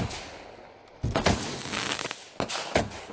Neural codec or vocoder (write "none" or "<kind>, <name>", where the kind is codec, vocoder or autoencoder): none